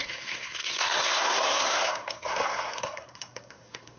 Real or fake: fake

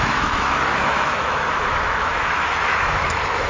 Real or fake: fake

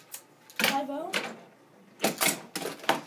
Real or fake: real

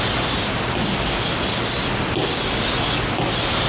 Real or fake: real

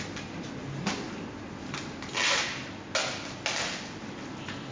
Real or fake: real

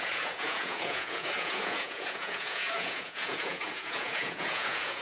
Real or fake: fake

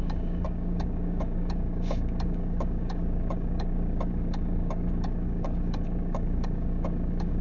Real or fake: fake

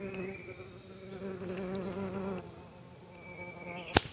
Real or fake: real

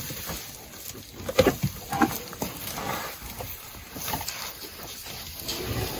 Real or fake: real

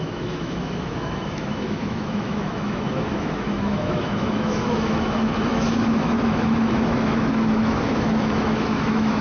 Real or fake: fake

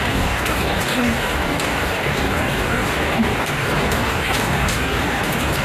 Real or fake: fake